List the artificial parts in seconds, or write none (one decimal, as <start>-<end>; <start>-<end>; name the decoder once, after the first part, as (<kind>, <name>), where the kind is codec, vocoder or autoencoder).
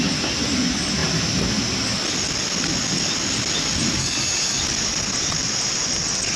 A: 4.0-4.6 (codec, DAC)